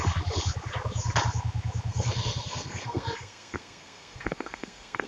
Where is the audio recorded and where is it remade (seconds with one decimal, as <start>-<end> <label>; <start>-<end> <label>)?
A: 0.0-1.9 recorded; 1.9-5.1 remade